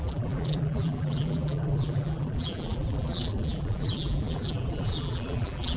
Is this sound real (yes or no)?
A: no